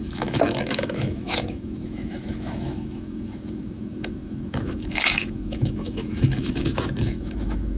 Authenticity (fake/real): fake